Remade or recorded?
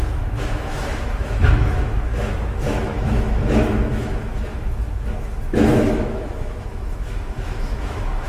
remade